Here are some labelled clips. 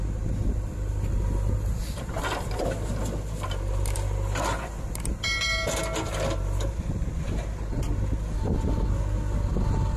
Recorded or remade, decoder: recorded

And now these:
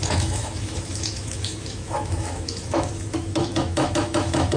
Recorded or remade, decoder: remade, autoencoder, DAC-VAE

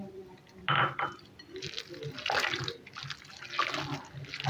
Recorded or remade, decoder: recorded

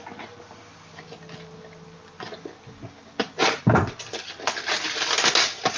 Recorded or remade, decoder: recorded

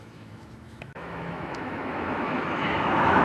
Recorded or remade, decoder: remade, autoencoder, DAC-VAE